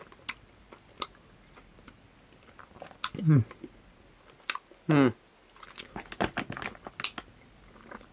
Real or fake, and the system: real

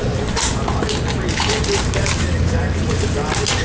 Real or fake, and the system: real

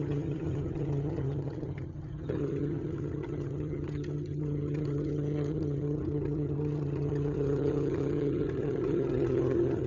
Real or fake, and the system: fake, vocoder, HiFi-GAN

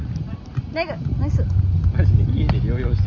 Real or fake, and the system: real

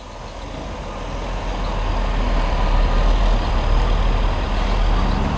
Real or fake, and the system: real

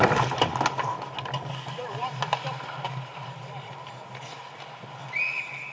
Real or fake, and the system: real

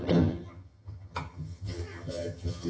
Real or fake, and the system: fake, vocoder, HiFi-GAN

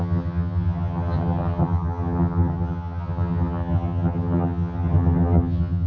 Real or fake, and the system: fake, vocoder, HiFi-GAN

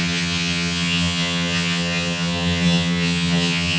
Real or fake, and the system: fake, vocoder, HiFi-GAN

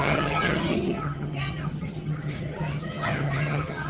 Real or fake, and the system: fake, vocoder, HiFi-GAN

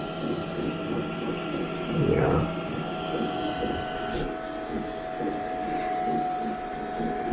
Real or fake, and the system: real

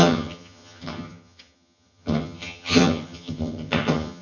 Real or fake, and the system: fake, vocoder, HiFi-GAN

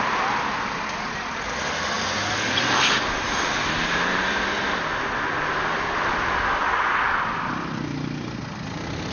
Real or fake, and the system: real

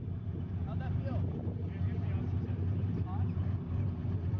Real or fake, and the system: real